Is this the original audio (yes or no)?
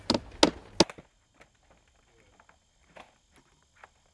yes